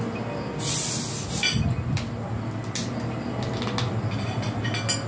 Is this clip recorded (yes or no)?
yes